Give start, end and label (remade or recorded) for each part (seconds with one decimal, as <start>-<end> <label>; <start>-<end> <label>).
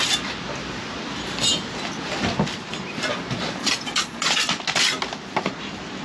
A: 0.0-3.6 recorded; 3.6-4.4 remade; 4.4-6.0 recorded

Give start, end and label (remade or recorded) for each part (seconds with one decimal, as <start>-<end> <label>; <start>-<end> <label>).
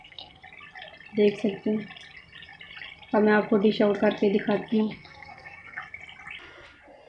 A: 0.0-0.4 remade; 0.4-4.7 recorded; 4.7-5.8 remade; 5.8-7.1 recorded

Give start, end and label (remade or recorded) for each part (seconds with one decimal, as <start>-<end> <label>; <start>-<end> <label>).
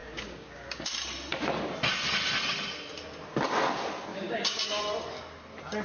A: 0.0-0.9 remade; 0.9-4.1 recorded; 4.1-4.8 remade; 4.8-5.8 recorded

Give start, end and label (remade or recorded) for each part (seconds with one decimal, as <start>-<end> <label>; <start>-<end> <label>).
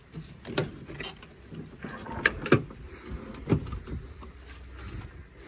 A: 0.0-5.5 recorded